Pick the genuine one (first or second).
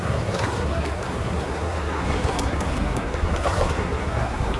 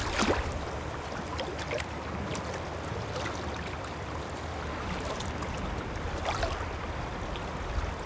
second